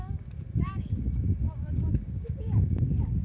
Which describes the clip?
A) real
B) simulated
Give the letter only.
B